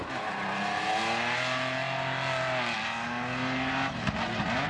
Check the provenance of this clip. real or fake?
real